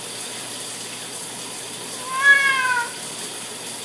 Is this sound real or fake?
real